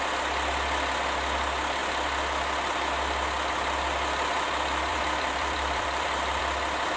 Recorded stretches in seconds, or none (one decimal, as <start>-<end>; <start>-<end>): 0.0-4.9; 6.4-7.0